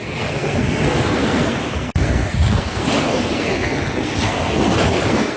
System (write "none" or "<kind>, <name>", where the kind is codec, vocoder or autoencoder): codec, SNAC